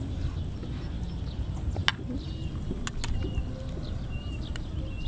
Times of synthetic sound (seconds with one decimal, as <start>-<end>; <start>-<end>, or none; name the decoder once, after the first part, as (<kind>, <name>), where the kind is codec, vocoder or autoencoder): none